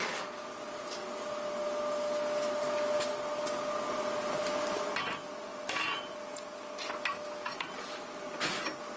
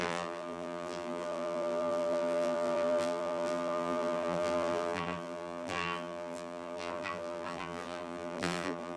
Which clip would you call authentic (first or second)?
first